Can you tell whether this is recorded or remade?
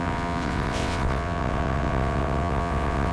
remade